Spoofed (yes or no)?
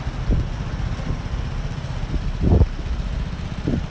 no